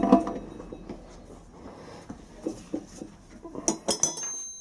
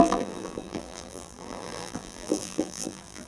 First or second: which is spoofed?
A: second